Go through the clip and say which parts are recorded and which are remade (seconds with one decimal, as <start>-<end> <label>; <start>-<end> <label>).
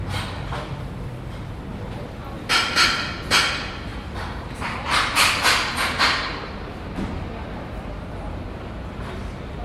0.0-3.9 recorded; 3.9-7.0 remade; 7.0-9.6 recorded